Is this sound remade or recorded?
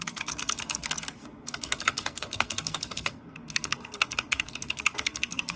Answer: remade